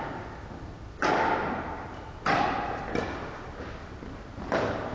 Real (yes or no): yes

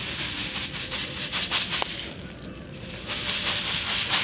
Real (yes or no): yes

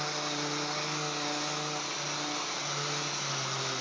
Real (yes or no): yes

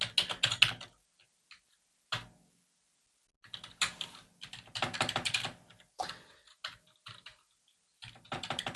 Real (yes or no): yes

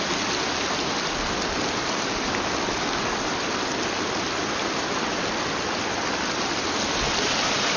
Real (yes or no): yes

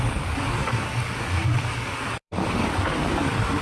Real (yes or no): no